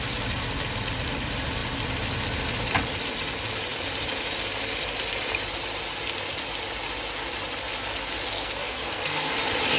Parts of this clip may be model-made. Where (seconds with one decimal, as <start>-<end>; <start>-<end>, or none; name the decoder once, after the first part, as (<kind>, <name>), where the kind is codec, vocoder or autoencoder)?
8.3-9.3 (codec, SNAC)